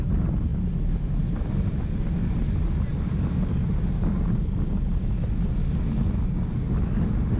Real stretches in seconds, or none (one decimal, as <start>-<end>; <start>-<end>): 0.0-7.4